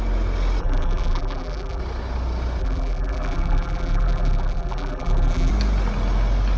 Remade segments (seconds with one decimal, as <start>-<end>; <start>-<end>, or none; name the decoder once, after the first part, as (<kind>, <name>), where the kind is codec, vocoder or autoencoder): 0.6-1.8 (vocoder, BigVGAN v2); 2.6-5.5